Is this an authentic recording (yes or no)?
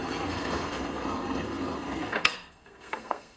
no